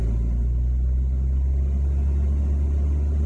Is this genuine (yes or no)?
yes